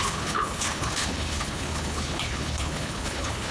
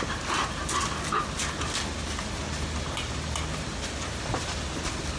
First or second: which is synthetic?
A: first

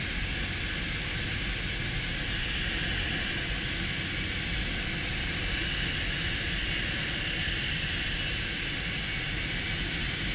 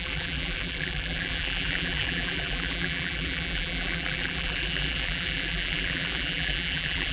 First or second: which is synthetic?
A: second